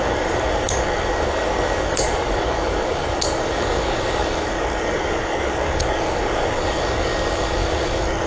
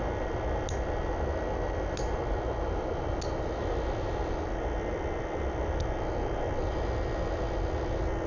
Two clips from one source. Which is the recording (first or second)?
second